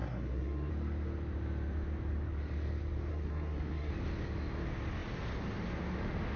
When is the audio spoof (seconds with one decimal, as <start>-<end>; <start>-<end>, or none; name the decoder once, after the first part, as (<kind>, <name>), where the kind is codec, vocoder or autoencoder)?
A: 0.0-0.7 (codec, SNAC); 3.1-3.9